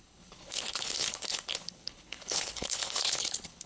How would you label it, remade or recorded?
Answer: remade